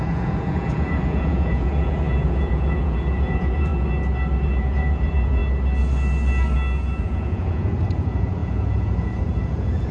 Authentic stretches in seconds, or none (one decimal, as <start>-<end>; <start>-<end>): 3.7-4.4; 5.4-7.0